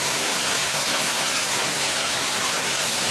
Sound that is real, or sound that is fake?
fake